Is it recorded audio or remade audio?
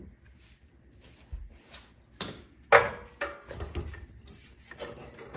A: recorded